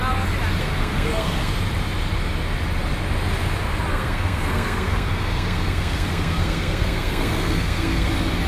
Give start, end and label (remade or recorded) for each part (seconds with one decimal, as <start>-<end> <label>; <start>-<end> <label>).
0.0-0.6 recorded; 0.6-1.5 remade; 1.5-3.9 recorded; 3.9-8.1 remade; 8.1-8.5 recorded